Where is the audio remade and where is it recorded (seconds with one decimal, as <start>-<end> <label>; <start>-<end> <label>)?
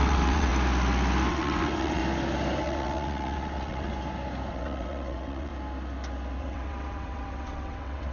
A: 0.0-0.5 remade; 0.5-1.3 recorded; 1.3-2.0 remade; 2.0-2.6 recorded; 2.6-3.9 remade; 3.9-4.5 recorded; 4.5-5.5 remade; 5.5-6.4 recorded; 6.4-8.1 remade